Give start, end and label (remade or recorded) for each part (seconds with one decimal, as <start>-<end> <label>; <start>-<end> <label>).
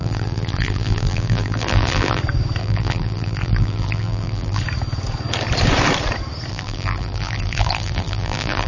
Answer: 0.0-2.2 remade; 2.2-2.6 recorded; 2.6-4.6 remade; 4.6-6.5 recorded; 6.5-8.7 remade